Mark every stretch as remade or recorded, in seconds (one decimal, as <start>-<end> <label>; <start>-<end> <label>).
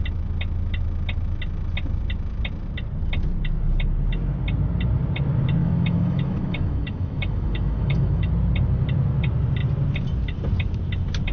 0.0-5.6 recorded; 5.6-8.3 remade; 8.3-11.3 recorded